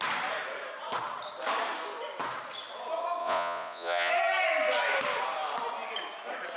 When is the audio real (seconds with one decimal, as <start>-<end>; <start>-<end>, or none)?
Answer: 0.0-3.2; 4.1-6.6